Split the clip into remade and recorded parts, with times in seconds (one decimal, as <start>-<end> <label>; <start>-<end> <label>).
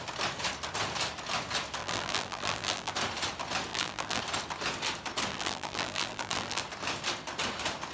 0.0-1.8 recorded; 1.8-2.9 remade; 2.9-3.7 recorded; 3.7-4.2 remade; 4.2-5.3 recorded; 5.3-6.6 remade; 6.6-7.9 recorded